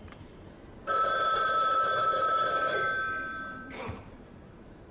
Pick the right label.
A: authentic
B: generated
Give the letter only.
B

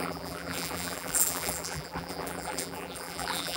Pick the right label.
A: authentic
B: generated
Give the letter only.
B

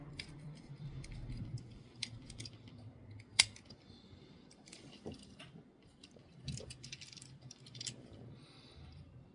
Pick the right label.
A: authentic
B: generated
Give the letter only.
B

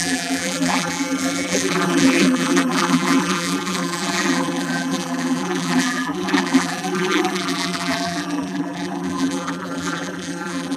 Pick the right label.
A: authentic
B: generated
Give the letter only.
B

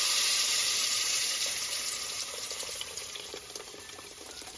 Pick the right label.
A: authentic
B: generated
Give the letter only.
B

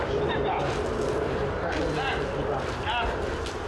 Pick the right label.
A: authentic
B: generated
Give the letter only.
A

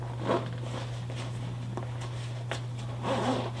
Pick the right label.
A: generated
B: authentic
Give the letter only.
B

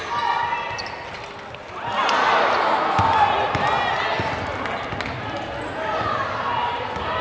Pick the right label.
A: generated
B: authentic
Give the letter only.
B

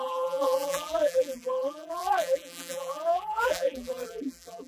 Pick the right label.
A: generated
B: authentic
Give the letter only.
A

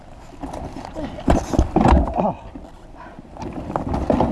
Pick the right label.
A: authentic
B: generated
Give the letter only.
A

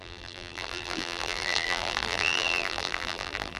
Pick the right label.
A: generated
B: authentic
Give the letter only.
A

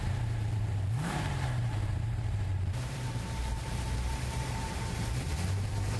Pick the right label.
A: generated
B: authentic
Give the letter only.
A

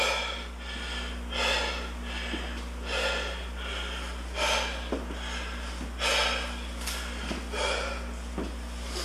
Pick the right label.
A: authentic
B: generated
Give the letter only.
A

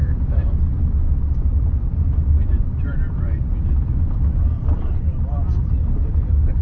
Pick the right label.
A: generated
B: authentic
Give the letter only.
A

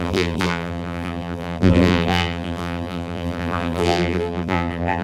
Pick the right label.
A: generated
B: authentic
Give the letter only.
A